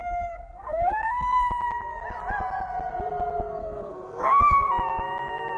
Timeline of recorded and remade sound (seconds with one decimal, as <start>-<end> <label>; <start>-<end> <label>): 0.0-1.5 remade; 1.5-3.6 recorded; 3.6-4.7 remade; 4.7-5.6 recorded